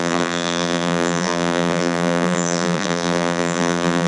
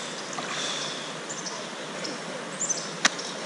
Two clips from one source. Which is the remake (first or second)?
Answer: first